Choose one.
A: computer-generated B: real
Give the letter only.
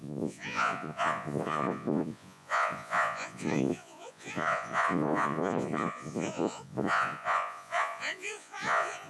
A